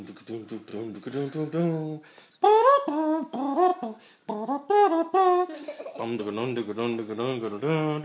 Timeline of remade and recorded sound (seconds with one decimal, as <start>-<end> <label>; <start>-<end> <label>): 0.0-8.0 recorded